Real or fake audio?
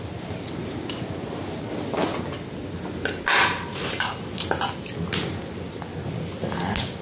real